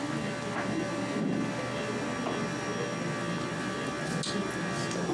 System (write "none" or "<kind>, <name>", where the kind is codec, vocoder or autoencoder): none